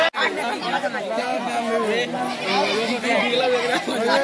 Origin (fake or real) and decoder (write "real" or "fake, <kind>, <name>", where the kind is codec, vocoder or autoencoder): real